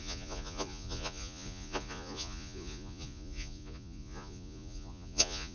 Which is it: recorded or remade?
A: remade